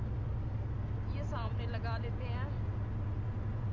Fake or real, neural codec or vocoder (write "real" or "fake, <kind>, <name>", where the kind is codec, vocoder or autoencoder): real